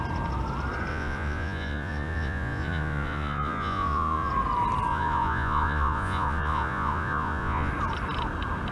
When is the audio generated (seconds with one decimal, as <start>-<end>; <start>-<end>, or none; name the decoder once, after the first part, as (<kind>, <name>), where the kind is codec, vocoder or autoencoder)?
0.9-4.3 (vocoder, Vocos); 4.9-7.7